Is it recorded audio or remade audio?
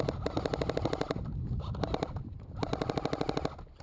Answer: recorded